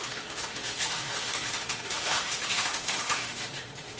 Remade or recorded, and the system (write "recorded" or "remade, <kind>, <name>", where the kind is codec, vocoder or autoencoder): remade, autoencoder, DAC-VAE